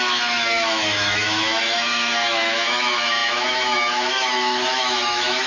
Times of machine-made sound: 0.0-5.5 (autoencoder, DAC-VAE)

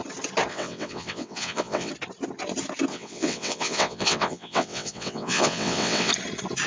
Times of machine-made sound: 0.5-1.9 (vocoder, WaveNeXt); 2.9-6.1